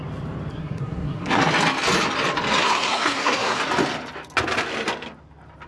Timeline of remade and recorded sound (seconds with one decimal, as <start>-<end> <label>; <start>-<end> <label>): 0.0-0.5 recorded; 0.5-1.4 remade; 1.4-2.6 recorded; 2.6-3.6 remade; 3.6-5.7 recorded